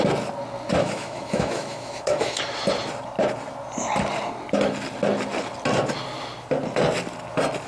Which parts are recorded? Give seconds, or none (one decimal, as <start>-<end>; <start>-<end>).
0.0-0.8; 2.4-7.7

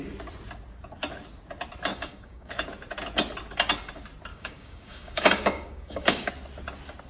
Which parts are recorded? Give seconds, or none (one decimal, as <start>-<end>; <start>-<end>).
0.0-1.9; 2.7-4.3; 6.3-7.1

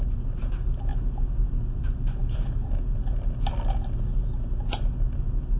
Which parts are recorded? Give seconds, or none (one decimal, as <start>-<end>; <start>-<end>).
0.0-0.9; 1.5-5.6